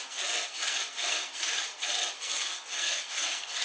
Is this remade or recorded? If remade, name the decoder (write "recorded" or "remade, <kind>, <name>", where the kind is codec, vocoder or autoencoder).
remade, codec, SNAC